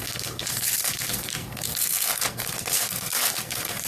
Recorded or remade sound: remade